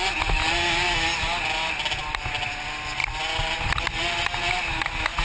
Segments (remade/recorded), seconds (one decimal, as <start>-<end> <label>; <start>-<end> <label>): 0.0-5.2 recorded